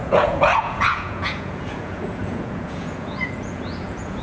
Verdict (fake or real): fake